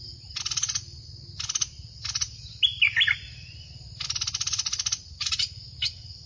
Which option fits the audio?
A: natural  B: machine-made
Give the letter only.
A